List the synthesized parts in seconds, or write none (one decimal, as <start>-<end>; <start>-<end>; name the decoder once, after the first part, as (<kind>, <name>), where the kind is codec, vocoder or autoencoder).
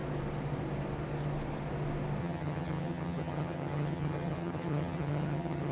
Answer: 2.2-5.7 (vocoder, HiFi-GAN)